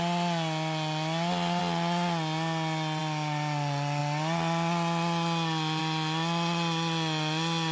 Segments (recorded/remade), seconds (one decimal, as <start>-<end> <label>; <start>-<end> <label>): 0.0-7.7 recorded